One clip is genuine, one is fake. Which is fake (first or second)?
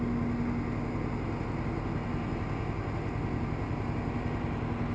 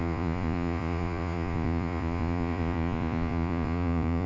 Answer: second